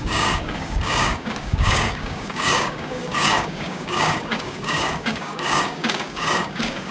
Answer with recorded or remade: remade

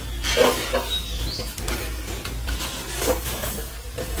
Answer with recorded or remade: recorded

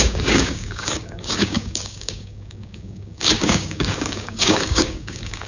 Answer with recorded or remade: remade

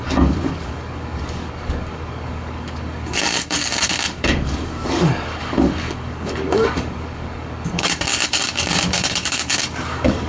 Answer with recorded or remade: remade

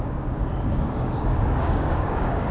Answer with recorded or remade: remade